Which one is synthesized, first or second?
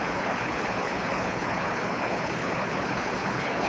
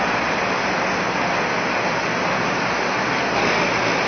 first